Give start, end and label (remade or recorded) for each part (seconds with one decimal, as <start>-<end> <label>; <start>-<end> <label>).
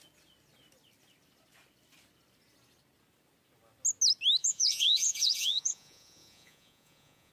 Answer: 0.0-4.4 recorded; 4.4-7.3 remade